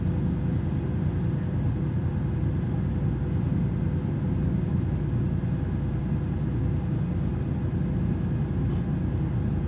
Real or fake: real